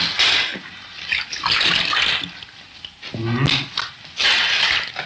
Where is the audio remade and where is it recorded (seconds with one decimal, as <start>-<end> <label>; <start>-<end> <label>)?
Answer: 0.0-5.1 recorded